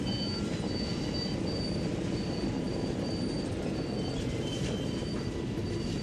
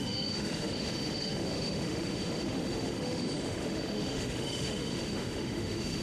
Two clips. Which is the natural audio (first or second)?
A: first